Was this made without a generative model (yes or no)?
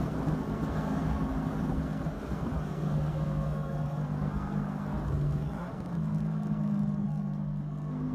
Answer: no